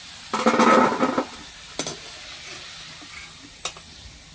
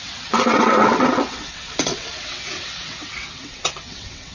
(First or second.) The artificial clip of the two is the second